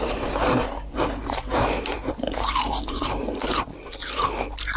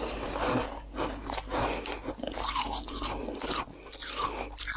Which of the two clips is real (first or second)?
second